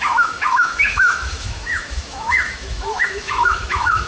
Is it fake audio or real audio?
fake